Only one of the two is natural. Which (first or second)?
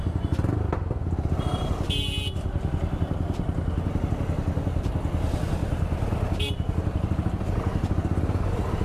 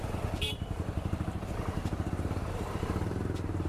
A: first